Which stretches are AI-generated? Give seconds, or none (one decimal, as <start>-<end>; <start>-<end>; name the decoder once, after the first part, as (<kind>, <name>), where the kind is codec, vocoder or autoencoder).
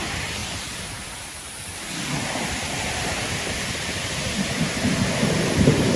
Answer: none